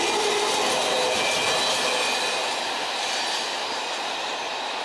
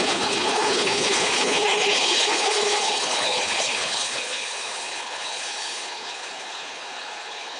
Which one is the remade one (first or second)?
second